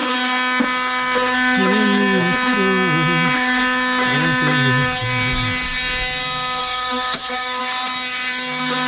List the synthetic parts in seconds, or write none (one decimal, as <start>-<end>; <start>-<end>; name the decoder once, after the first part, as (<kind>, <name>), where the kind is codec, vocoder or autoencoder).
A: 6.6-7.6 (autoencoder, DAC-VAE)